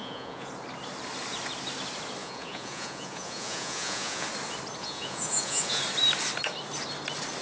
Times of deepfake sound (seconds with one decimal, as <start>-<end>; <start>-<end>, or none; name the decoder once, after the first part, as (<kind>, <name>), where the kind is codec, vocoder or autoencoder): 0.0-0.5 (vocoder, Vocos); 2.2-4.3; 4.8-5.8